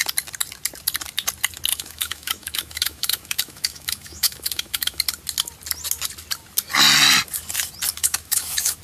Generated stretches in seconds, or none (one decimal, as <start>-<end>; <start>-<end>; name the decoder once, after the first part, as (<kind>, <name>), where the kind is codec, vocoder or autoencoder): 1.7-5.0 (autoencoder, DAC-VAE); 8.0-8.8